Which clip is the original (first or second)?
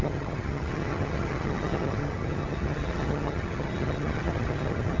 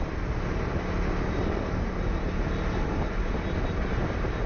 second